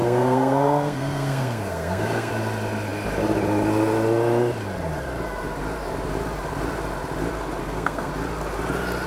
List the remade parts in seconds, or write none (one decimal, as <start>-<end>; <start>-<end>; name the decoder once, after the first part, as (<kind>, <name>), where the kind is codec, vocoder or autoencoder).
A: 0.0-2.3 (codec, SNAC); 7.6-8.1